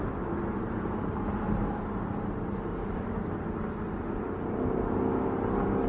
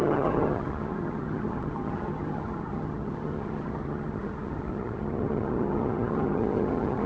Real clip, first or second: first